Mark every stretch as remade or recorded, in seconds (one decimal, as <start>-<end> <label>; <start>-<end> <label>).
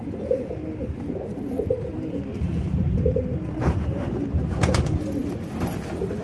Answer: 0.0-0.6 remade; 0.6-2.3 recorded; 2.3-5.2 remade; 5.2-6.2 recorded